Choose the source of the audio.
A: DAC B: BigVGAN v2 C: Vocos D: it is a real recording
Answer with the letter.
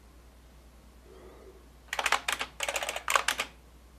D